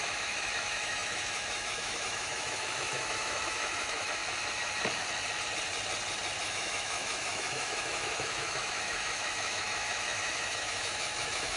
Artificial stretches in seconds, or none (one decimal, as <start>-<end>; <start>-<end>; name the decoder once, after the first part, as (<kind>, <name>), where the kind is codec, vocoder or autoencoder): 0.0-4.2 (autoencoder, DAC-VAE); 6.5-11.6